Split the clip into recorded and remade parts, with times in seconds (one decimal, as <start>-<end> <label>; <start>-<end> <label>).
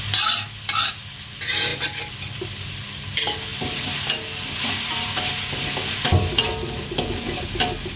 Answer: 0.0-8.0 recorded